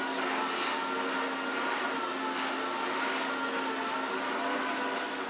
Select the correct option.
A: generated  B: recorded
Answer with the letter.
B